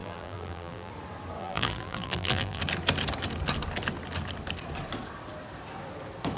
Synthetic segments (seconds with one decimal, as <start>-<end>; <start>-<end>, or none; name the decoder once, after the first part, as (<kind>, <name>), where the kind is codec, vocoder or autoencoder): 0.0-0.9 (vocoder, BigVGAN v2); 1.4-2.6